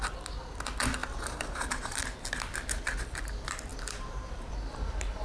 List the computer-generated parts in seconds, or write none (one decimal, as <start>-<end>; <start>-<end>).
1.0-2.0; 3.7-4.4

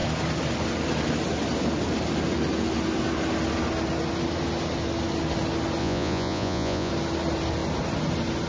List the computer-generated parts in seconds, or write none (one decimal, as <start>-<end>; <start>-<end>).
5.8-6.9

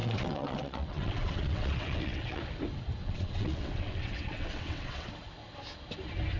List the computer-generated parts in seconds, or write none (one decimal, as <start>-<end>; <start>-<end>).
0.0-2.4; 3.0-5.1

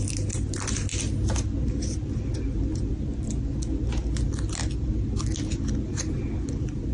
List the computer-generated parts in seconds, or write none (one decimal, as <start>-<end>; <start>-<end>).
none

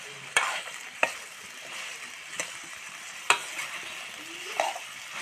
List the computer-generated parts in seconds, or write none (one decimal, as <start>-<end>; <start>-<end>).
0.0-3.4; 4.6-5.2

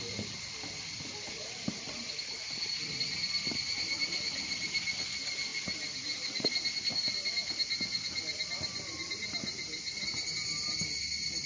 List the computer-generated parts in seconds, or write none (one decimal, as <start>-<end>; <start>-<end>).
none

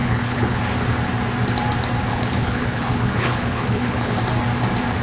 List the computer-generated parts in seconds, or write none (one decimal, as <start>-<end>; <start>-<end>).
0.0-0.6; 2.1-4.1